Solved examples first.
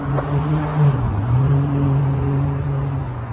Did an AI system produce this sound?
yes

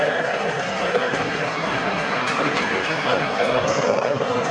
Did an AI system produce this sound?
yes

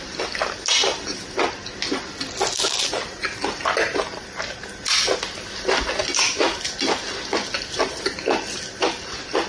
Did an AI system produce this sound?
no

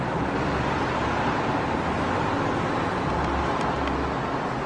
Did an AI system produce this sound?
no